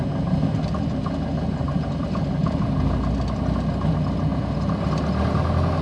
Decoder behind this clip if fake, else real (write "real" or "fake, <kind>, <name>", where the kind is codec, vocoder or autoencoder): real